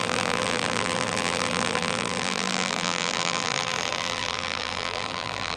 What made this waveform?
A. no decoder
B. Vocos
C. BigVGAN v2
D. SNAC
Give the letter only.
C